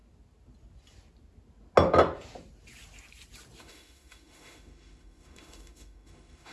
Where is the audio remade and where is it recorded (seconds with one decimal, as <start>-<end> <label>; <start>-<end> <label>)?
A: 0.0-3.6 recorded; 3.6-6.5 remade